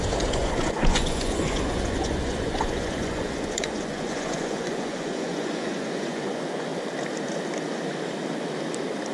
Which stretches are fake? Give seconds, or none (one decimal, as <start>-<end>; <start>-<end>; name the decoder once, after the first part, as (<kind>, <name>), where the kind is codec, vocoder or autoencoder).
0.0-6.7 (vocoder, Vocos)